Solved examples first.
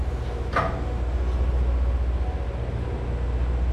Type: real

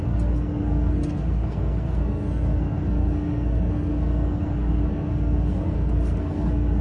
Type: fake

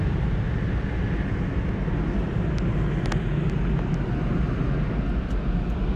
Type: real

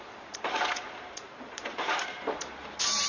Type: fake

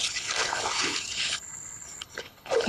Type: fake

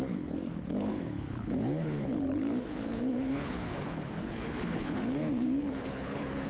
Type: fake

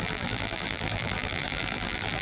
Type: fake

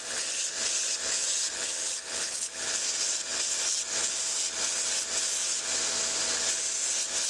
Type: real